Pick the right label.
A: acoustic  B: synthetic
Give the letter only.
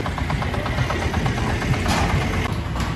A